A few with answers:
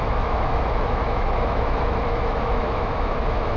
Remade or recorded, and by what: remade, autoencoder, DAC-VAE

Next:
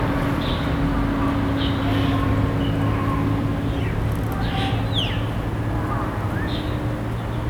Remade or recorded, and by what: recorded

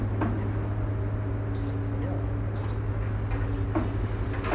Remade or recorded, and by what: recorded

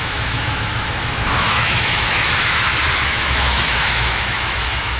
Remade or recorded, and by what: remade, autoencoder, DAC-VAE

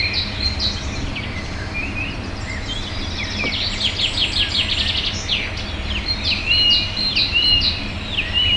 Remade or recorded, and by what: recorded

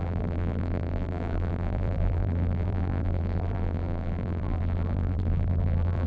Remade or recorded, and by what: remade, vocoder, BigVGAN v2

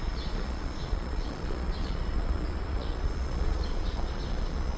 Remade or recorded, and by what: remade, vocoder, Vocos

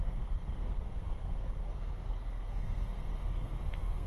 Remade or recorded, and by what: remade, codec, SNAC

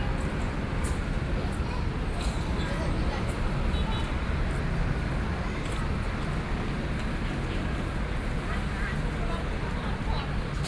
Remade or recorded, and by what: recorded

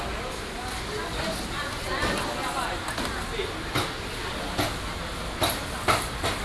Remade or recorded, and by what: recorded